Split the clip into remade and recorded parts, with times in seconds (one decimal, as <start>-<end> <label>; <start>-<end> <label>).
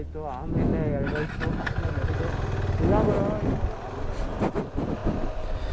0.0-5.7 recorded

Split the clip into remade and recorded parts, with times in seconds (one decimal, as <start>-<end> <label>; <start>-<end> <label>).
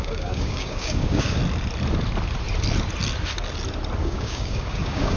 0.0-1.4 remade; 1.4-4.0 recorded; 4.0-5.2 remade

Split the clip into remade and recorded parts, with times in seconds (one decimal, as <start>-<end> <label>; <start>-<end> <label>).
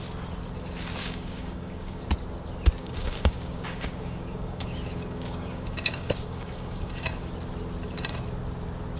0.0-1.0 recorded; 1.0-2.0 remade; 2.0-2.8 recorded; 2.8-7.3 remade; 7.3-9.0 recorded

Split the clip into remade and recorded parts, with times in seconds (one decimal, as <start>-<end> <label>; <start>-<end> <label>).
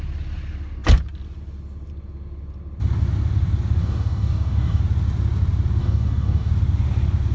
0.0-3.8 recorded; 3.8-4.8 remade; 4.8-5.8 recorded; 5.8-6.5 remade; 6.5-7.3 recorded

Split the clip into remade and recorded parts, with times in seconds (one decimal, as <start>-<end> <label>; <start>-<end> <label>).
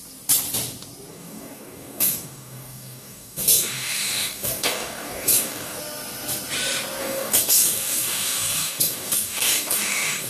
0.0-1.1 recorded; 1.1-5.8 remade; 5.8-7.0 recorded; 7.0-10.3 remade